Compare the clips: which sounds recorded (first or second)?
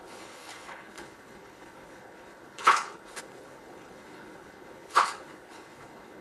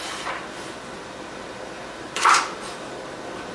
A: second